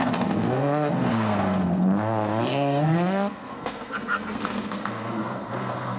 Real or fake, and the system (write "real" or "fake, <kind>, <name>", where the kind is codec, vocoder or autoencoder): fake, codec, SNAC